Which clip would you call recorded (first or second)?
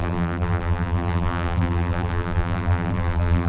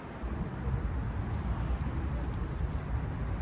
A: second